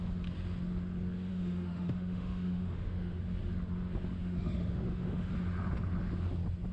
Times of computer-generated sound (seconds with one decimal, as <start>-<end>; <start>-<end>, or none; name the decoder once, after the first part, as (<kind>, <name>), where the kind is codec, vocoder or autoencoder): 1.3-3.2 (autoencoder, DAC-VAE); 4.2-5.3